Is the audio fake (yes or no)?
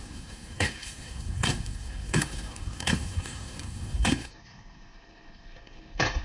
yes